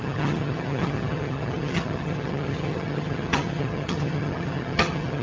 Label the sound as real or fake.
fake